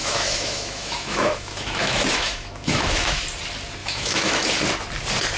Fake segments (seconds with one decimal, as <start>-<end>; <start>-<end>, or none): 0.0-3.2; 3.8-4.5